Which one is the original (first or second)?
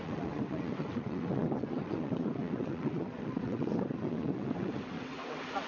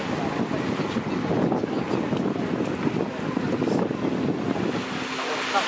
second